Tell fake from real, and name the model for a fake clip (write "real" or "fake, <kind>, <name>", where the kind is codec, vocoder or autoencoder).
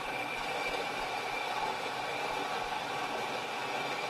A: real